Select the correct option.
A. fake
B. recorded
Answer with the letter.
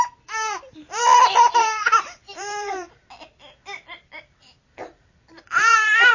A